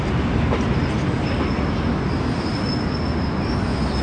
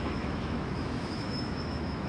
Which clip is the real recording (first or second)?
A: first